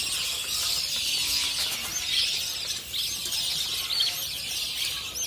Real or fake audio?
real